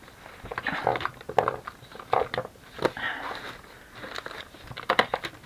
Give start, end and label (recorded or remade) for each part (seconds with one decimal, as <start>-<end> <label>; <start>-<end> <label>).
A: 0.0-5.5 recorded

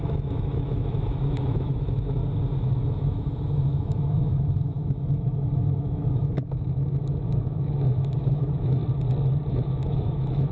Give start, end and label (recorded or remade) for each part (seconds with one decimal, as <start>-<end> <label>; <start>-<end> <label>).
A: 0.0-2.2 remade; 2.2-2.8 recorded; 2.8-8.8 remade; 8.8-9.5 recorded; 9.5-10.5 remade

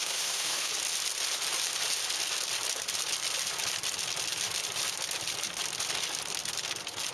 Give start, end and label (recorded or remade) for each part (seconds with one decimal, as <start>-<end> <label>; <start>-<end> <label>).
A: 0.0-0.7 remade; 0.7-7.1 recorded

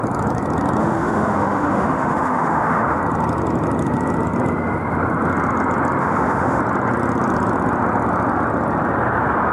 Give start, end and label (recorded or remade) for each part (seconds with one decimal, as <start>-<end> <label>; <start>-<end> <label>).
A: 0.0-0.8 recorded; 0.8-3.0 remade; 3.0-6.0 recorded; 6.0-6.6 remade; 6.6-9.5 recorded

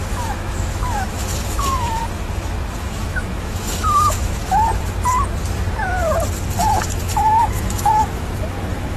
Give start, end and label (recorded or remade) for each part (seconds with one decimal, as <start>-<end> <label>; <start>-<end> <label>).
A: 0.0-2.0 remade; 2.0-2.7 recorded; 2.7-4.4 remade; 4.4-7.0 recorded; 7.0-9.0 remade

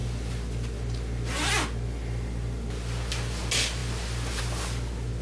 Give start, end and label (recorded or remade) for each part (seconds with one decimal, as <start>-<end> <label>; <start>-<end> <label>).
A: 0.0-5.2 recorded

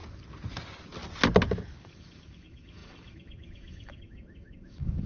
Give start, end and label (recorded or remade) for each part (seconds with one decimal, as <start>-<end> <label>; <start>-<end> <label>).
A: 0.0-1.8 recorded; 1.8-5.1 remade